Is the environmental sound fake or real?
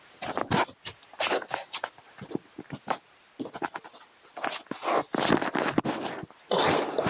real